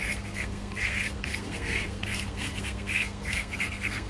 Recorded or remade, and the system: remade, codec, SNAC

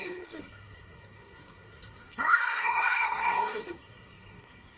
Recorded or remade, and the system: remade, codec, SNAC